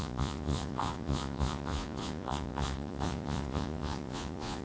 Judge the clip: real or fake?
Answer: fake